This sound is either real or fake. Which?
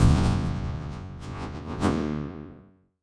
fake